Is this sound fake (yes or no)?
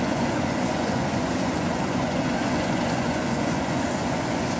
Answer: yes